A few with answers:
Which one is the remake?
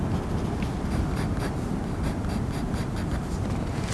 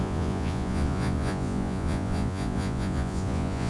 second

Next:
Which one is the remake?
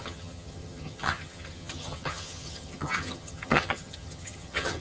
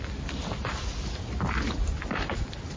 first